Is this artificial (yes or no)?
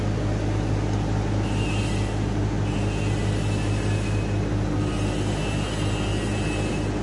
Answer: no